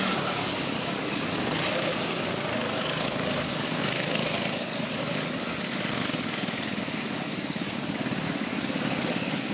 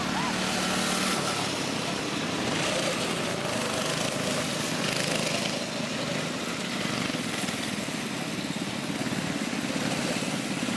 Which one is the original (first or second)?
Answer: second